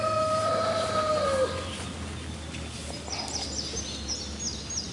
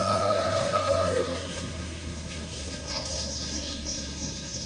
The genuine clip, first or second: first